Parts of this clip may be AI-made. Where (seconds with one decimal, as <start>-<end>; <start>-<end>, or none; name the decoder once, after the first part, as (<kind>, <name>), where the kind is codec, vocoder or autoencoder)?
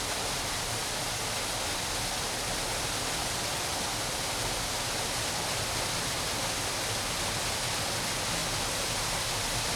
none